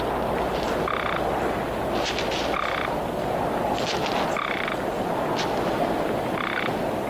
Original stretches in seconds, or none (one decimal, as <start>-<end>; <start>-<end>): 0.0-7.1